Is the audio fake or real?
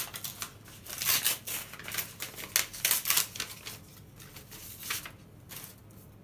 real